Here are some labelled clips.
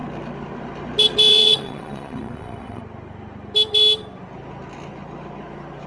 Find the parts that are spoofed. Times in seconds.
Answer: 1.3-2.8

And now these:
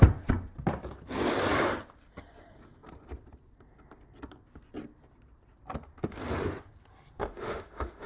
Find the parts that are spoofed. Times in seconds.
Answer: 7.2-8.1